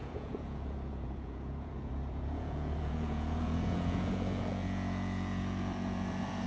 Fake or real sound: fake